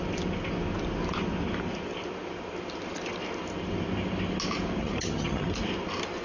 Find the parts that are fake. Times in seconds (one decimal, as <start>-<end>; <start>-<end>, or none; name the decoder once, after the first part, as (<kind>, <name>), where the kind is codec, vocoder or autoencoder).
4.8-5.5 (vocoder, HiFi-GAN)